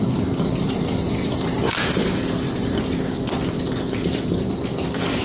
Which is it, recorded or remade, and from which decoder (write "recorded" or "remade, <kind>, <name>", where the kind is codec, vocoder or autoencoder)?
remade, vocoder, BigVGAN v2